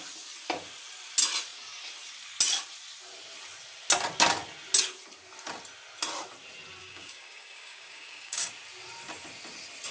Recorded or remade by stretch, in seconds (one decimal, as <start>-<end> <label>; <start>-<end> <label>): 0.0-6.8 recorded; 6.8-8.5 remade; 8.5-9.9 recorded